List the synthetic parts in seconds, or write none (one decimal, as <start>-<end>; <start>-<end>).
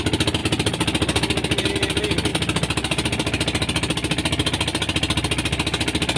none